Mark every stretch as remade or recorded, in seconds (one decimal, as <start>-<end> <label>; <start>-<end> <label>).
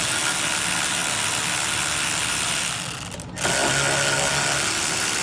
0.0-5.2 recorded